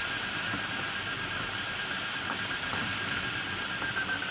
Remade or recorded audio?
recorded